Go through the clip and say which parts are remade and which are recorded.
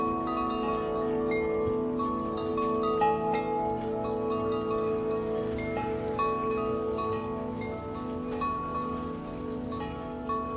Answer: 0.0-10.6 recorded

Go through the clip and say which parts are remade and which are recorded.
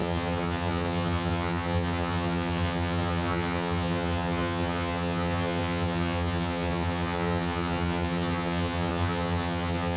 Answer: 0.0-10.0 remade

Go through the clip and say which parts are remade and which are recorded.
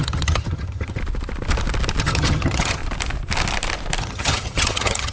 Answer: 0.0-1.0 remade; 1.0-2.0 recorded; 2.0-2.8 remade; 2.8-4.0 recorded; 4.0-5.1 remade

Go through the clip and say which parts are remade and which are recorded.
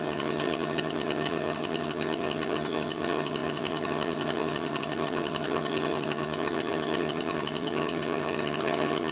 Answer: 0.0-9.1 remade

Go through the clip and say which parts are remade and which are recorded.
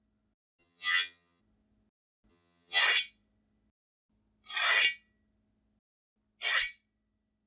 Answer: 0.0-0.6 recorded; 0.6-1.4 remade; 1.4-2.3 recorded; 2.3-2.8 remade; 2.8-7.5 recorded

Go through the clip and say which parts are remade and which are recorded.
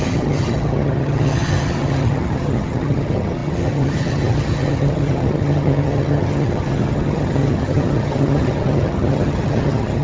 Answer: 0.0-10.0 remade